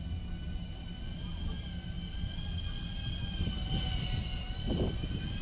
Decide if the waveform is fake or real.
real